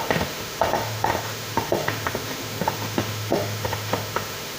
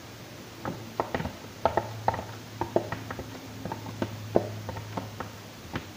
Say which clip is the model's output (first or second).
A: first